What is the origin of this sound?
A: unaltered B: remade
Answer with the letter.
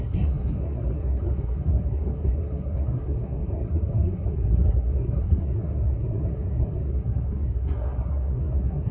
B